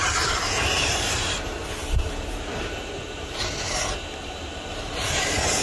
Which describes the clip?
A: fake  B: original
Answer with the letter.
A